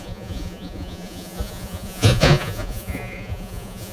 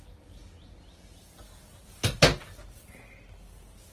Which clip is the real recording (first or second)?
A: second